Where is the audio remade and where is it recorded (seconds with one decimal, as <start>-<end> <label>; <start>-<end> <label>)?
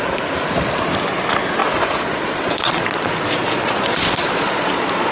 0.0-1.6 recorded; 1.6-5.1 remade